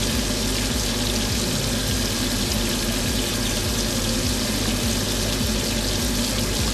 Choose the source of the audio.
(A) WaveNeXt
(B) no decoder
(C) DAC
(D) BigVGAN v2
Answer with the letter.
B